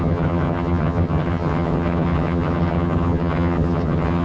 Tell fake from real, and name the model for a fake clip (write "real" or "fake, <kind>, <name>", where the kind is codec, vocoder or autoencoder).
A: fake, vocoder, HiFi-GAN